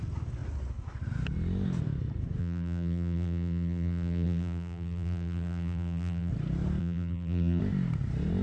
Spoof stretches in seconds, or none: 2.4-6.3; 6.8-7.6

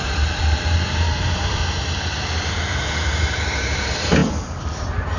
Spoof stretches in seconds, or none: 0.0-1.6; 2.5-5.2

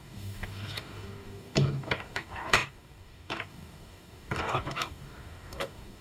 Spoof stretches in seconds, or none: 0.0-6.0

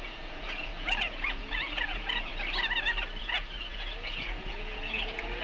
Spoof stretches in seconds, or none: 0.0-2.3; 3.2-5.4

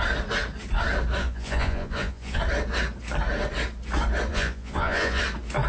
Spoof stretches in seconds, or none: 1.2-2.4; 4.3-5.2

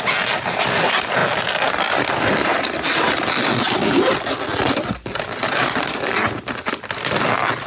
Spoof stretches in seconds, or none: none

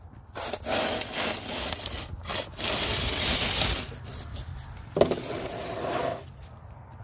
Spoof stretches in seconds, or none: none

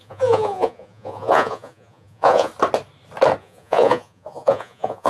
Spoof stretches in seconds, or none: 0.0-2.5; 3.4-5.1